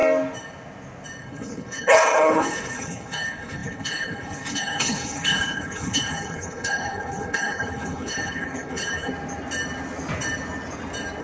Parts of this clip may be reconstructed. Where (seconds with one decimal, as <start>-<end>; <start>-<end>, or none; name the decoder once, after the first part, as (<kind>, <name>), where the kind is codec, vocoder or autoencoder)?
1.2-9.1 (codec, HILCodec)